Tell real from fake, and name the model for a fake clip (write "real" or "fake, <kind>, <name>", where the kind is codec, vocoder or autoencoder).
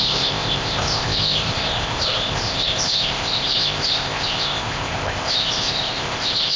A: fake, codec, ZipCodec